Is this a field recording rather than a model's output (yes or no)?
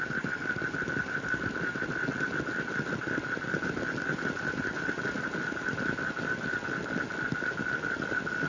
yes